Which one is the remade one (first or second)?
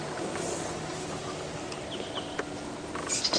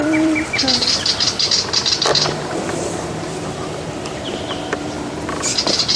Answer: second